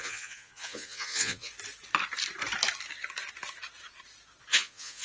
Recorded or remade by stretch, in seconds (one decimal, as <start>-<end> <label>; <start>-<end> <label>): 0.0-1.5 remade; 1.5-4.5 recorded; 4.5-5.0 remade